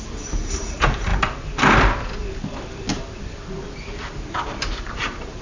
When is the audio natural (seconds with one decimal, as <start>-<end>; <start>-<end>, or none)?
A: 1.1-4.2